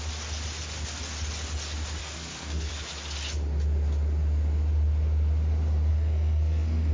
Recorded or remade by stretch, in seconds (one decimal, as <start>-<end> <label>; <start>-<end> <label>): 0.0-2.0 recorded; 2.0-2.7 remade; 2.7-5.9 recorded; 5.9-6.9 remade